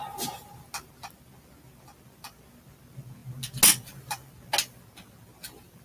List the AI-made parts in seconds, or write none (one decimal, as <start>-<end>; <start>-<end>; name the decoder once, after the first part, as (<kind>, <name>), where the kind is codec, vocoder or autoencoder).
none